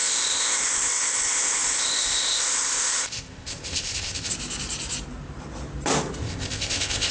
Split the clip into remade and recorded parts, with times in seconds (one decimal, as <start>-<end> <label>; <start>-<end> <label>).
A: 0.0-4.3 remade; 4.3-6.2 recorded; 6.2-7.1 remade